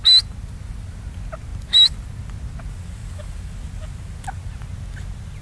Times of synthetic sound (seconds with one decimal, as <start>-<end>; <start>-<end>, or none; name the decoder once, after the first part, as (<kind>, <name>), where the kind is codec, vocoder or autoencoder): none